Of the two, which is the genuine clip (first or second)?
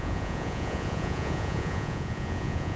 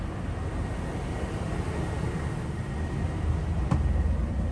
second